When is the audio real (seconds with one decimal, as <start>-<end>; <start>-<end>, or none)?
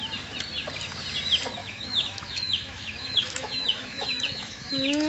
0.0-1.6